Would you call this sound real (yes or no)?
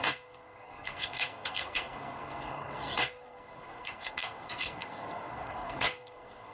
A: no